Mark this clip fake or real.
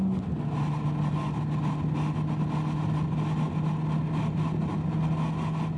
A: real